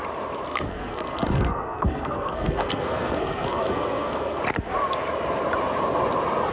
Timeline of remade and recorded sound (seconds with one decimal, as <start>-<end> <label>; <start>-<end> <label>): 0.0-0.5 recorded; 0.5-4.4 remade; 4.4-6.5 recorded